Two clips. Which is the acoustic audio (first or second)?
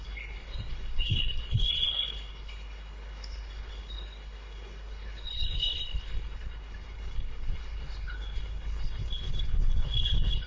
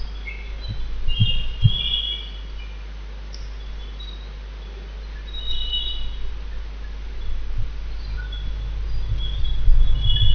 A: second